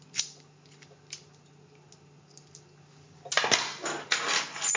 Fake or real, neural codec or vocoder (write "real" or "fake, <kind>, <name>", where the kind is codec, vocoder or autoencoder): real